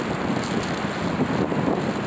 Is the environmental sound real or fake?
real